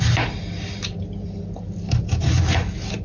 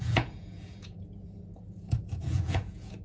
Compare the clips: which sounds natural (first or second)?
first